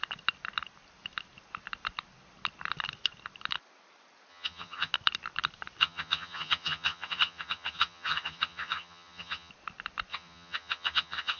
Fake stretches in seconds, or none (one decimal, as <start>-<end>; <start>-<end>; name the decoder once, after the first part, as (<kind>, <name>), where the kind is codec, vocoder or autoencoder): 4.3-4.9 (vocoder, HiFi-GAN); 5.8-9.5; 10.1-11.4